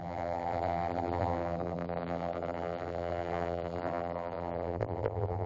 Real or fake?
fake